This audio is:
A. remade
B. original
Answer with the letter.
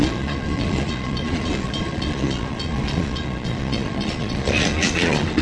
A